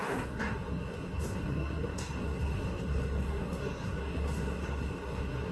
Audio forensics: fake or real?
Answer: fake